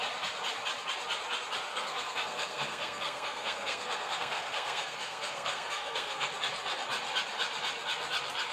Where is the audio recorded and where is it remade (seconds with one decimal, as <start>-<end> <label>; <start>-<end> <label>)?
0.0-1.7 recorded; 1.7-6.3 remade; 6.3-8.5 recorded